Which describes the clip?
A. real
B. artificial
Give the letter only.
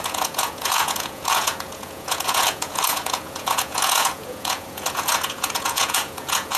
B